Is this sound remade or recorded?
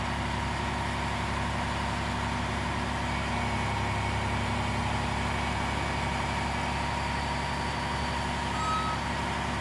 recorded